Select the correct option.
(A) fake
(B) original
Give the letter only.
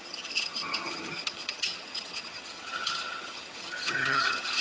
A